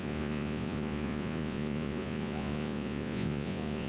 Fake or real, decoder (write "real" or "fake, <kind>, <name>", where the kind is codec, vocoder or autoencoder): fake, vocoder, Vocos